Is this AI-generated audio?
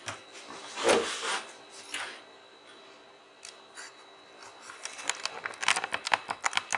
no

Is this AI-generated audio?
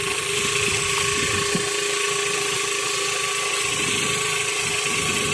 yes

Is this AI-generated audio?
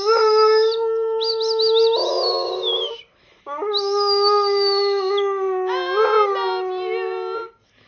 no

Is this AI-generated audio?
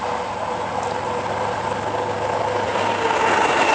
no